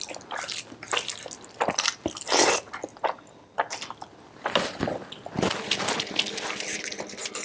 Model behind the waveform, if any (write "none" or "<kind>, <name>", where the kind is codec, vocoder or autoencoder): none